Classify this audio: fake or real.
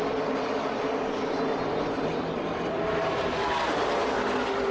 real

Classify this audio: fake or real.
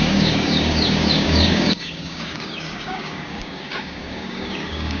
fake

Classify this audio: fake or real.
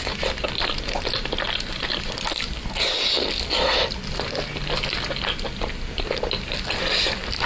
real